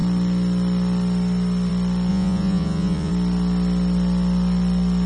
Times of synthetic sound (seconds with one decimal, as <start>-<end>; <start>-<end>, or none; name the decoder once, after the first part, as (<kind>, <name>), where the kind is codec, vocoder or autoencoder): 2.1-3.1 (vocoder, Vocos)